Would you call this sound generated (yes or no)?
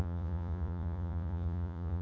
yes